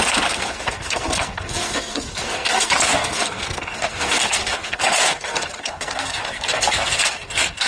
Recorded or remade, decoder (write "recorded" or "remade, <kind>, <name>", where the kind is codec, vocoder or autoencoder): remade, codec, SNAC